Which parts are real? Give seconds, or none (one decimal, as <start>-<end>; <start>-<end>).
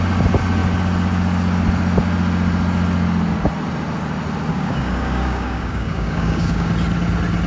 0.0-4.5; 6.7-7.5